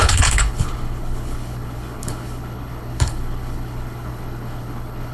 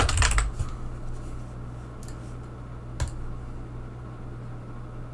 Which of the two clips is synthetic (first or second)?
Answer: first